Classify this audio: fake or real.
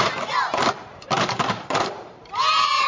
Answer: fake